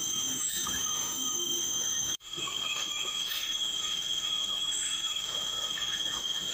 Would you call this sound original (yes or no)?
no